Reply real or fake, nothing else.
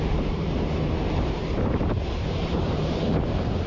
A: fake